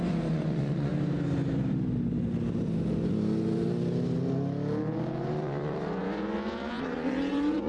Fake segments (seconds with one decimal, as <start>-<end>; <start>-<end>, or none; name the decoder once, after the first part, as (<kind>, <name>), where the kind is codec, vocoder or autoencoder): 0.0-0.9 (vocoder, Vocos); 5.2-7.7